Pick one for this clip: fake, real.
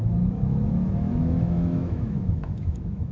fake